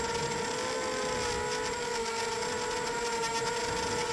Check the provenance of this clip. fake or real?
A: real